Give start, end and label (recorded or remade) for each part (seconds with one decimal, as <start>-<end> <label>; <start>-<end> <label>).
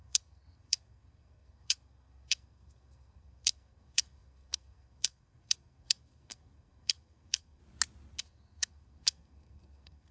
0.0-7.6 remade; 7.6-8.2 recorded; 8.2-10.1 remade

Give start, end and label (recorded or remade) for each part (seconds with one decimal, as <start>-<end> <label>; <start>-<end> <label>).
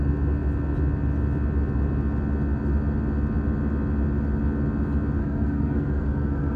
0.0-5.2 recorded; 5.2-6.6 remade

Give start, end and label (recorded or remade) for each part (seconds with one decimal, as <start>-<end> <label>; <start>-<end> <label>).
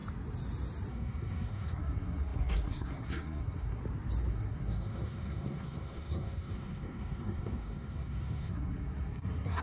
0.0-0.9 recorded; 0.9-3.8 remade; 3.8-4.3 recorded; 4.3-9.6 remade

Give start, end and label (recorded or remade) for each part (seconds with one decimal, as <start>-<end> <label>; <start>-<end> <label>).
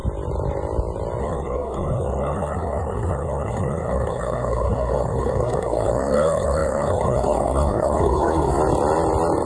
0.0-1.2 recorded; 1.2-8.6 remade; 8.6-9.5 recorded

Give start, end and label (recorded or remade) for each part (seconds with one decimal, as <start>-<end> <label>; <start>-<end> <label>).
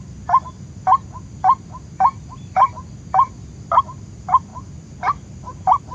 0.0-5.9 recorded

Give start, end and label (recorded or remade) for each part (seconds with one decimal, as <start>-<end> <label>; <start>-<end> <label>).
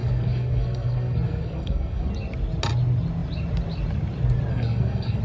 0.0-2.1 remade; 2.1-4.5 recorded; 4.5-5.2 remade